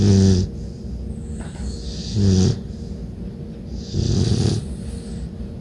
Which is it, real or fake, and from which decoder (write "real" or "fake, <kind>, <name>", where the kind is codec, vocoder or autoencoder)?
real